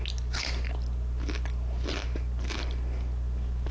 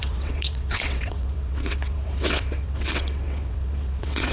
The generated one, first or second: second